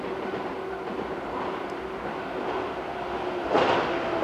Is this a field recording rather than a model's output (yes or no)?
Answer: yes